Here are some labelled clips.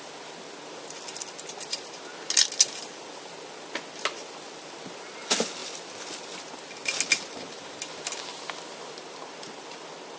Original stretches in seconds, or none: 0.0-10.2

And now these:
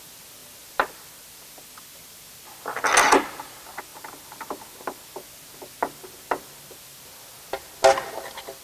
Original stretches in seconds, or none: 0.0-8.6

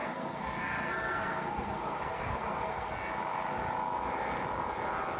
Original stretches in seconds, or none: 2.9-5.2

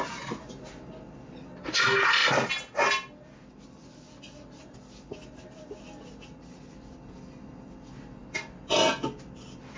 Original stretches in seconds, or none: 0.0-9.8

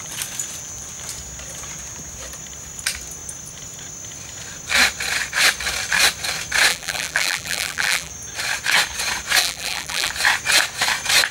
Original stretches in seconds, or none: 0.0-6.7; 8.1-9.4; 10.1-11.3

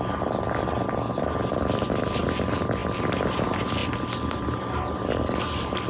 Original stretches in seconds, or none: 0.0-5.9

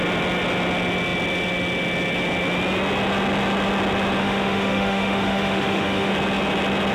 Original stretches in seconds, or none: 0.0-4.2; 6.1-6.9

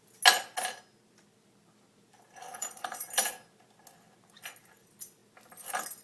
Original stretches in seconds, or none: 0.0-2.5; 3.1-6.0